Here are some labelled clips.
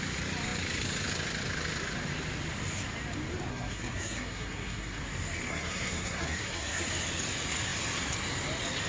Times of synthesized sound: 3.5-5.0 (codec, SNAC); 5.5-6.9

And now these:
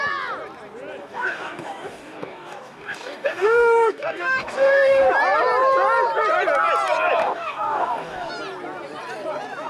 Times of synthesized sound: 1.0-5.1 (codec, DAC); 7.2-8.3

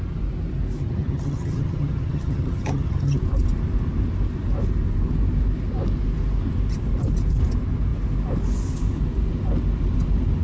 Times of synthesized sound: 0.8-3.2 (vocoder, HiFi-GAN)

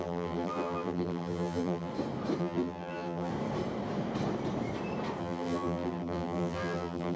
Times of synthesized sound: 0.0-1.9 (vocoder, BigVGAN v2); 2.4-3.3; 5.2-7.2

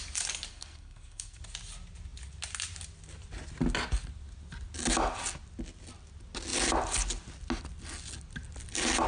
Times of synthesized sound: 0.5-1.4 (codec, SNAC)